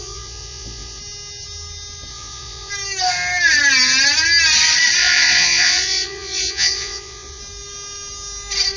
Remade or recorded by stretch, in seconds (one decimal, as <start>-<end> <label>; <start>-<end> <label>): 0.0-1.0 remade; 1.0-2.1 recorded; 2.1-2.7 remade; 2.7-5.0 recorded; 5.0-7.4 remade; 7.4-8.8 recorded

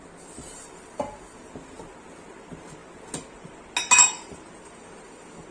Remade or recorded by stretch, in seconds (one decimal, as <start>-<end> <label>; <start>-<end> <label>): 0.0-5.5 recorded

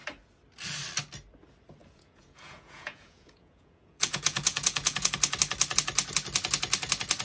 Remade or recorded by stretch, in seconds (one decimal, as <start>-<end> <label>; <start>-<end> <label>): 0.0-1.8 recorded; 1.8-5.1 remade; 5.1-7.2 recorded

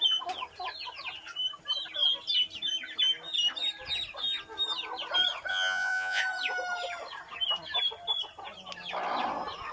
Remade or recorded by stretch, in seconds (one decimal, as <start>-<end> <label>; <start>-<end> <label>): 0.0-5.5 recorded; 5.5-6.2 remade; 6.2-9.7 recorded